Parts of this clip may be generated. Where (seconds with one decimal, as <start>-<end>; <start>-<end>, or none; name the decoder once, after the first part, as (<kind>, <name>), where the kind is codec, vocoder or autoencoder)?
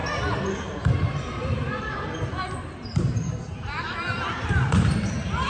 0.9-5.5 (vocoder, BigVGAN v2)